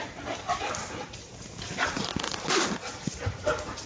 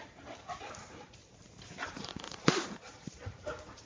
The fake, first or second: second